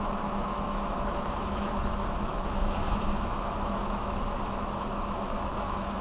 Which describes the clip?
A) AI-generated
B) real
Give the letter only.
A